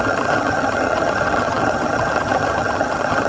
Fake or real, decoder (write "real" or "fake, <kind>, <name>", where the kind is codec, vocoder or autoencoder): fake, vocoder, HiFi-GAN